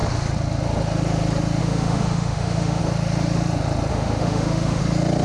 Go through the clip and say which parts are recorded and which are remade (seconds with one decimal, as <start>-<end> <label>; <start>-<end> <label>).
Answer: 0.0-1.6 recorded; 1.6-2.8 remade; 2.8-3.9 recorded; 3.9-4.8 remade; 4.8-5.2 recorded

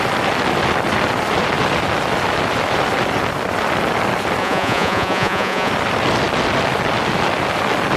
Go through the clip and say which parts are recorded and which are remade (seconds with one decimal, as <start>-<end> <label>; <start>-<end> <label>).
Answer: 0.0-4.4 recorded; 4.4-5.7 remade; 5.7-8.0 recorded